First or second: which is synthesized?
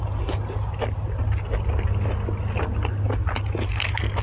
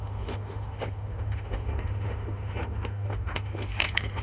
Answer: second